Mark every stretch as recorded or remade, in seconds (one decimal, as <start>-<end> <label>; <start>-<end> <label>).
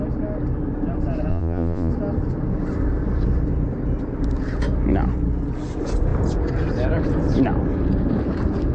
0.0-1.3 recorded; 1.3-1.9 remade; 1.9-8.7 recorded